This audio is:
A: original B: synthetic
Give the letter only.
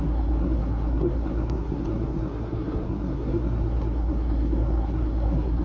B